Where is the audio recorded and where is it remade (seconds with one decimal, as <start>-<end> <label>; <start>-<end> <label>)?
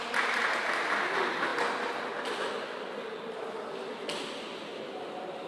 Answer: 0.0-5.5 recorded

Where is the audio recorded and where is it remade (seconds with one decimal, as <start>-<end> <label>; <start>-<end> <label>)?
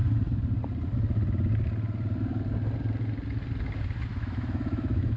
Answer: 0.0-4.1 recorded; 4.1-5.2 remade